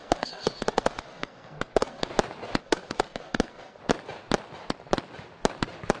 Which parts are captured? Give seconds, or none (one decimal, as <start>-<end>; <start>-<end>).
2.1-2.6; 3.8-6.0